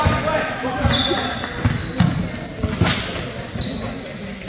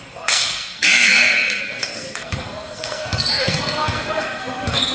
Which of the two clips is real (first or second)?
first